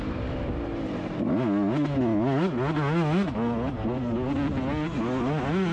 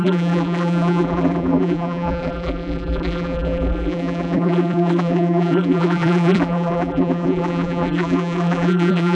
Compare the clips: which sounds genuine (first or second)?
first